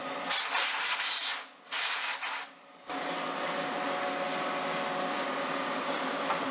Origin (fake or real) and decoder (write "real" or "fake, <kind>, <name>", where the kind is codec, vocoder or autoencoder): real